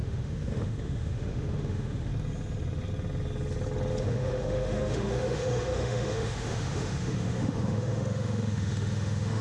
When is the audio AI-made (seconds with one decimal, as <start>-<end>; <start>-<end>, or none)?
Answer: 0.0-2.1; 4.0-9.4